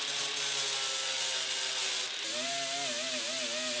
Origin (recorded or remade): recorded